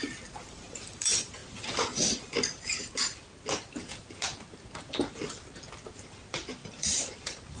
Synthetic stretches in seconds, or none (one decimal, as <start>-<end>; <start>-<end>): 0.5-1.4; 5.9-7.6